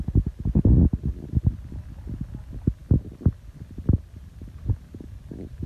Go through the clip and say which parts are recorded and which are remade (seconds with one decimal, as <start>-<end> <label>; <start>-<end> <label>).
0.0-5.7 remade